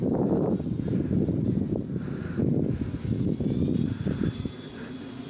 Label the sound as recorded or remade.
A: remade